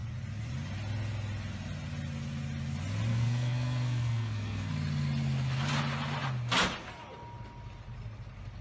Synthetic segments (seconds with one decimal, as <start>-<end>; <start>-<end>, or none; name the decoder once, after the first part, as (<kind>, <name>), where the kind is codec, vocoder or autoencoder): 3.1-4.7 (codec, SNAC)